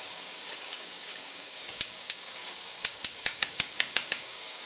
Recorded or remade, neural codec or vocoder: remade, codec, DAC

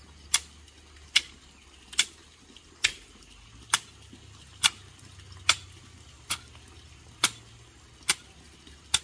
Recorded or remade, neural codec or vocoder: recorded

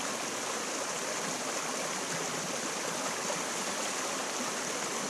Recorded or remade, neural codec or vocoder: recorded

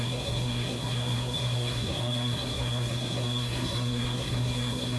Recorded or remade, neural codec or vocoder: remade, codec, SNAC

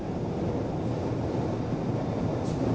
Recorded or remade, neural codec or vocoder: recorded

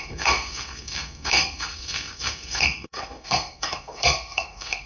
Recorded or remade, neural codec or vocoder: remade, codec, SNAC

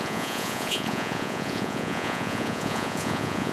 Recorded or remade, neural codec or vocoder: remade, vocoder, Vocos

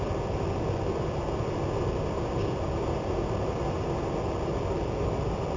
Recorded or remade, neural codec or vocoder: recorded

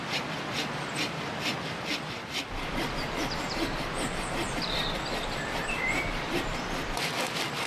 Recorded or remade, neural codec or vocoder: remade, vocoder, BigVGAN v2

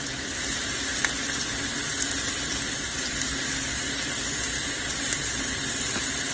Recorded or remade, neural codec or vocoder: recorded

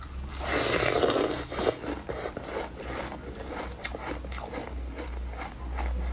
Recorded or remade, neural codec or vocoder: recorded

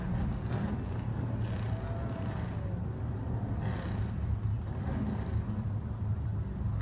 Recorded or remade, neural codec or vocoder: recorded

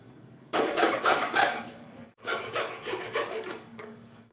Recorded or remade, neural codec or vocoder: remade, codec, DAC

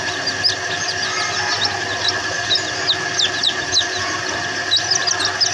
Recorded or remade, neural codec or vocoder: recorded